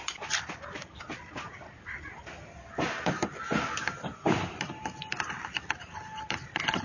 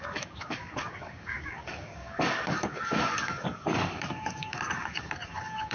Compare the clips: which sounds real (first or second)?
first